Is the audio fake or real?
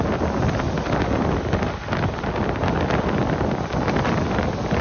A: real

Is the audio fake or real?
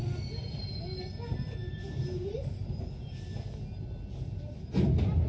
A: real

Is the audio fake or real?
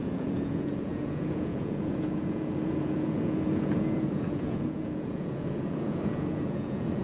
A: fake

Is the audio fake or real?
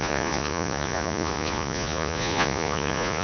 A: fake